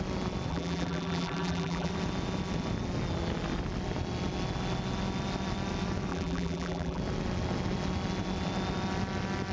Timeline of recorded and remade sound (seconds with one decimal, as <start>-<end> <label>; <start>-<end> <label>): 0.0-0.5 recorded; 0.5-1.9 remade; 1.9-6.1 recorded; 6.1-7.0 remade; 7.0-9.5 recorded

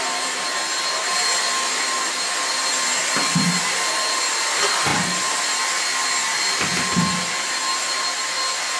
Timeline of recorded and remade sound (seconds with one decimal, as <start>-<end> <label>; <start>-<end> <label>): 0.0-4.9 recorded; 4.9-5.5 remade; 5.5-8.8 recorded

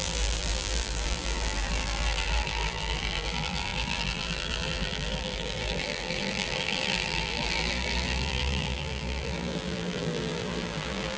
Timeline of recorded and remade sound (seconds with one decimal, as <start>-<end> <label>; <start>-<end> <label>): 0.0-11.2 remade

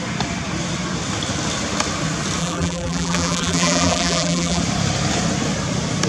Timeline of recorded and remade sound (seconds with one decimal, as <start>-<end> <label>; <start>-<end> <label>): 0.0-2.4 recorded; 2.4-4.6 remade; 4.6-6.1 recorded

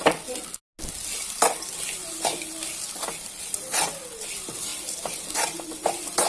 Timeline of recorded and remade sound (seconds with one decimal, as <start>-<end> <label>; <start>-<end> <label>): 0.0-6.3 recorded

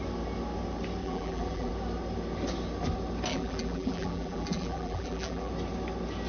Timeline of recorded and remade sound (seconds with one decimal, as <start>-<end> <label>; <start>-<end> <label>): 0.0-1.0 recorded; 1.0-1.7 remade; 1.7-3.3 recorded; 3.3-5.5 remade; 5.5-6.3 recorded

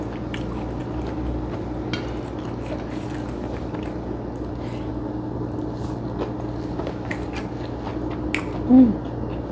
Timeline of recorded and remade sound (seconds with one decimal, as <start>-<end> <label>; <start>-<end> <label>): 0.0-9.5 recorded